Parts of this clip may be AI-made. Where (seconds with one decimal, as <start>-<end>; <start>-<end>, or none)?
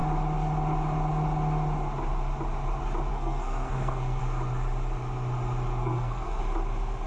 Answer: 3.1-4.2; 5.8-6.4